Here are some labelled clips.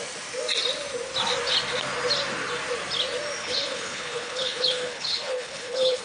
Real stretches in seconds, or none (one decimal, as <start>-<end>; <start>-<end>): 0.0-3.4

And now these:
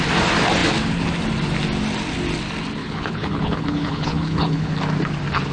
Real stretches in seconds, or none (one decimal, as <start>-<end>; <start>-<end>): 0.0-2.8; 4.7-5.5

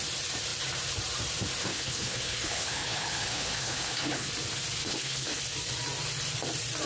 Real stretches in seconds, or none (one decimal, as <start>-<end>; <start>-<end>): 0.0-1.6; 4.3-4.8; 5.4-6.9

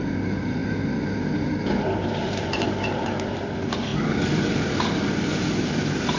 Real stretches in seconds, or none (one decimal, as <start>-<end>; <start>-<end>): 0.0-6.2